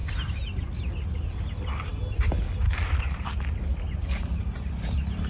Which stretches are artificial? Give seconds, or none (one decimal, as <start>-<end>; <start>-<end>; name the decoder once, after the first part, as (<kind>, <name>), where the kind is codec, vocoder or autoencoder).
none